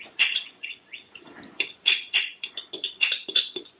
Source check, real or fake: fake